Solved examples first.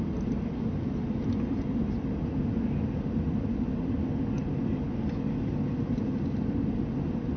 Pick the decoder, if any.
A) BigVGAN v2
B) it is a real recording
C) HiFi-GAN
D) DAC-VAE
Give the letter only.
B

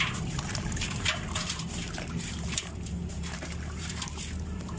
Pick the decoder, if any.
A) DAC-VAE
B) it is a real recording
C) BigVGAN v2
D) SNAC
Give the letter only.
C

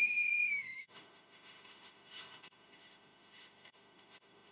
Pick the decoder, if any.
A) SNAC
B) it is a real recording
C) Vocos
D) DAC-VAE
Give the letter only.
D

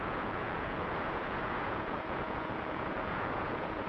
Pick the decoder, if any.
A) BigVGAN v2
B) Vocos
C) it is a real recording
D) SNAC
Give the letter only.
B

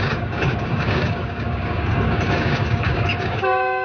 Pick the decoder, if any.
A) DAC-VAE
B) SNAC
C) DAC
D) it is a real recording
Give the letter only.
C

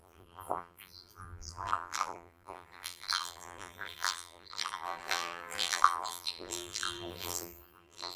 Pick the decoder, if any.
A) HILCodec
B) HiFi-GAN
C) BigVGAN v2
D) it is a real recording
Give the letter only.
C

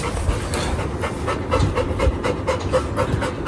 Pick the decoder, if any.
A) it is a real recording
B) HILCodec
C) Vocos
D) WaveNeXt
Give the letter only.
A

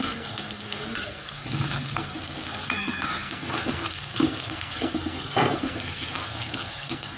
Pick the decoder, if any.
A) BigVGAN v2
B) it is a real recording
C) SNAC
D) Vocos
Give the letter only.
C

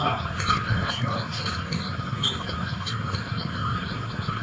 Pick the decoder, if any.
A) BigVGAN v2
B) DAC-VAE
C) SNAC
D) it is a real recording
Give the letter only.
C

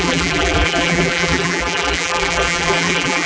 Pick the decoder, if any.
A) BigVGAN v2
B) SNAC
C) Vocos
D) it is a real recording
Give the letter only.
A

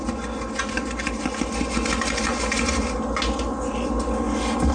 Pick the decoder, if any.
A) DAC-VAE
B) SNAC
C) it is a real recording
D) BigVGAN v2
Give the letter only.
C